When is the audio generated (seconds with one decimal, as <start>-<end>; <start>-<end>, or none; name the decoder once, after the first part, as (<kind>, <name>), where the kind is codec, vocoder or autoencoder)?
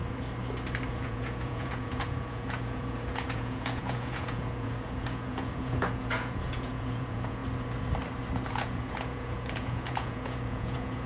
0.9-7.4 (vocoder, Vocos); 8.5-11.1